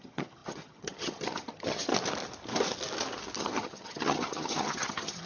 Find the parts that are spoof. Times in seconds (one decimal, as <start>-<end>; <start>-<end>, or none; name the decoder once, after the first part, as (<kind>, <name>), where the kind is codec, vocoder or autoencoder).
0.0-1.9 (vocoder, HiFi-GAN); 3.4-5.3